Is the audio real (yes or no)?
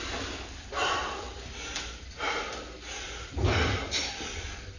no